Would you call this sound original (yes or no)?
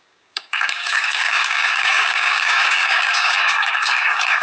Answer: no